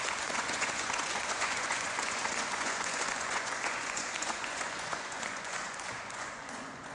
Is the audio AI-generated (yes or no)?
yes